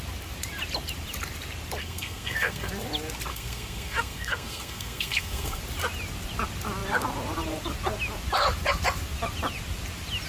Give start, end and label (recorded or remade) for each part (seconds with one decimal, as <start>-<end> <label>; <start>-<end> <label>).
0.0-1.8 recorded; 1.8-2.7 remade; 2.7-3.3 recorded; 3.3-5.6 remade; 5.6-10.3 recorded